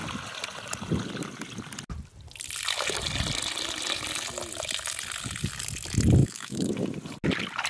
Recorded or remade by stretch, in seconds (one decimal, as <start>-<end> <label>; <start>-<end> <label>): 0.0-6.2 recorded; 6.2-6.7 remade; 6.7-7.7 recorded

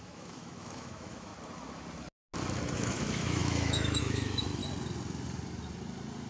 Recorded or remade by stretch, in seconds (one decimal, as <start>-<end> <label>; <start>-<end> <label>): 0.0-1.3 remade; 1.3-2.7 recorded; 2.7-4.6 remade; 4.6-6.3 recorded

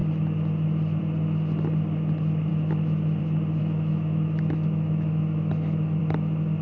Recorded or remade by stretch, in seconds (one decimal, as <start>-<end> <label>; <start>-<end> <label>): 0.0-2.5 recorded; 2.5-3.2 remade; 3.2-3.6 recorded; 3.6-6.0 remade; 6.0-6.6 recorded

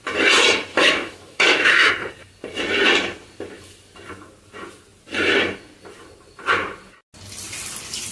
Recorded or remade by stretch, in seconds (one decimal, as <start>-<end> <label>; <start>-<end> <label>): 0.0-0.7 recorded; 0.7-1.9 remade; 1.9-8.1 recorded

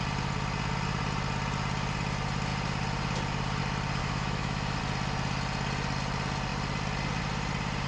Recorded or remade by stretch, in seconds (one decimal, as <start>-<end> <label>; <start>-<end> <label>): 0.0-4.0 recorded; 4.0-4.8 remade; 4.8-7.9 recorded

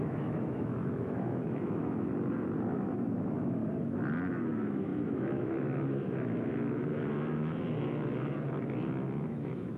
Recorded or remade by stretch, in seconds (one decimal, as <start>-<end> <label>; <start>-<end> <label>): 0.0-2.1 remade; 2.1-2.7 recorded; 2.7-3.6 remade; 3.6-4.3 recorded; 4.3-6.5 remade; 6.5-9.3 recorded; 9.3-9.8 remade

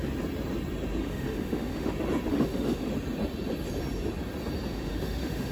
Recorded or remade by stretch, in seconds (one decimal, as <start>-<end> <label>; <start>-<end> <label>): 0.0-1.0 recorded; 1.0-1.9 remade; 1.9-2.3 recorded; 2.3-2.9 remade; 2.9-4.7 recorded; 4.7-5.5 remade

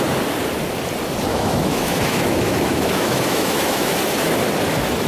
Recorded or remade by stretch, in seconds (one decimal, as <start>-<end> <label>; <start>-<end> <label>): 0.0-1.3 recorded; 1.3-3.9 remade; 3.9-5.1 recorded